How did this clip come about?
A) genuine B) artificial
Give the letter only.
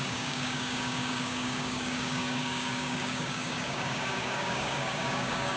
B